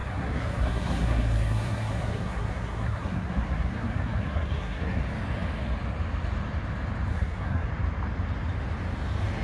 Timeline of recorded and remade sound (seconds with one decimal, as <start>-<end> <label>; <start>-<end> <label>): 0.0-5.0 remade; 5.0-7.1 recorded; 7.1-7.7 remade; 7.7-9.4 recorded